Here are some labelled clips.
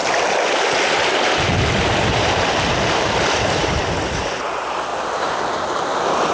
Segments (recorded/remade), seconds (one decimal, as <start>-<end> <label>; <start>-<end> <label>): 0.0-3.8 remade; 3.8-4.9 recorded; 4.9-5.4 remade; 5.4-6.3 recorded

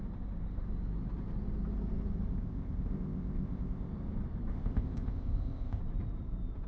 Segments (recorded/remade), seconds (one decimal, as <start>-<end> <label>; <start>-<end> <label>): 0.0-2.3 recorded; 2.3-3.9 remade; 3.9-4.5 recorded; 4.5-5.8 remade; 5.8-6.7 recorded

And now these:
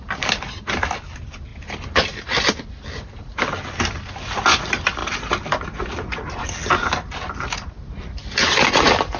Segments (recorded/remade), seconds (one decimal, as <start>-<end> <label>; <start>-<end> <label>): 0.0-9.2 recorded

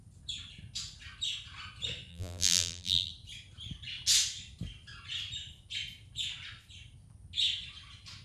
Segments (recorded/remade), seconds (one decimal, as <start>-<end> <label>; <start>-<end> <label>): 0.0-2.1 recorded; 2.1-3.1 remade; 3.1-8.2 recorded

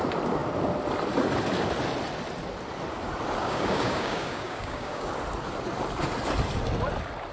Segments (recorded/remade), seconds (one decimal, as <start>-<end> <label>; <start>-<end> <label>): 0.0-3.4 recorded; 3.4-5.1 remade; 5.1-7.3 recorded

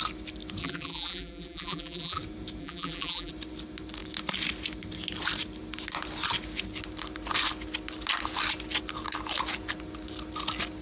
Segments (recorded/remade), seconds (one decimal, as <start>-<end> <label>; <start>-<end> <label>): 0.0-0.6 recorded; 0.6-2.2 remade; 2.2-2.6 recorded; 2.6-3.3 remade; 3.3-10.8 recorded

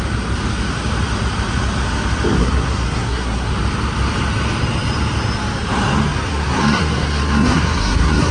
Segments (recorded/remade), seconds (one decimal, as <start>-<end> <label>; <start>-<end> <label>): 0.0-2.4 recorded; 2.4-3.5 remade; 3.5-6.3 recorded; 6.3-8.3 remade